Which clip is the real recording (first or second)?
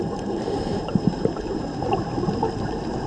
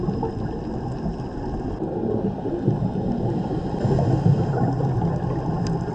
second